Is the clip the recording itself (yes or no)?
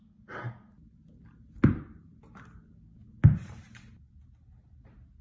yes